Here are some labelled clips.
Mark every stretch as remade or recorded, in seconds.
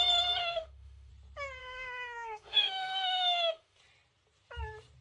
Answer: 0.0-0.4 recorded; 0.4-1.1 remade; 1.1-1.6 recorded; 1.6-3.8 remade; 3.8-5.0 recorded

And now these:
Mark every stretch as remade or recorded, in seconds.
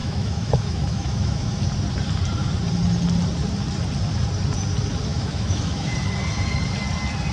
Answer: 0.0-1.6 remade; 1.6-5.1 recorded; 5.1-5.9 remade; 5.9-7.3 recorded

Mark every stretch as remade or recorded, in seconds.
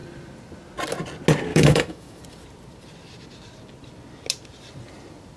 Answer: 0.0-1.5 recorded; 1.5-2.2 remade; 2.2-5.4 recorded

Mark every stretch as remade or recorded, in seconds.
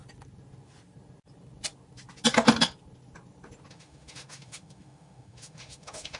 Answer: 0.0-3.7 recorded; 3.7-6.2 remade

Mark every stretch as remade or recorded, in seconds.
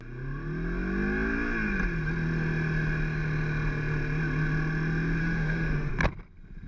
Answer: 0.0-5.2 recorded; 5.2-5.9 remade; 5.9-6.7 recorded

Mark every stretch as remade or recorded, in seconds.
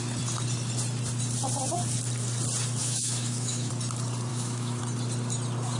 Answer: 0.0-2.8 recorded; 2.8-3.7 remade; 3.7-4.3 recorded; 4.3-4.8 remade; 4.8-5.8 recorded